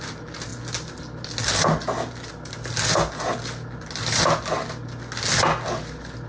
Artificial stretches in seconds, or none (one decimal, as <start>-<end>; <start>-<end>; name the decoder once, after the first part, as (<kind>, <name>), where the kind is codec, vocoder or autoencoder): none